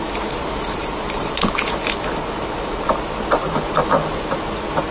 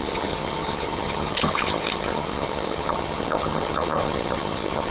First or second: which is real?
first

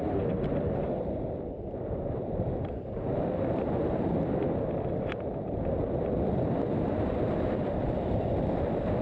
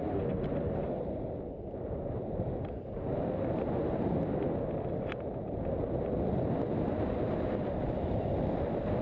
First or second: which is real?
second